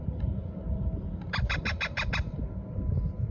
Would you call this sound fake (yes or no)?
no